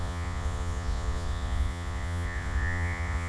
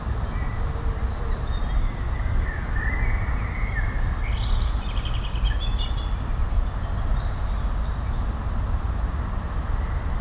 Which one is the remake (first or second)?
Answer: first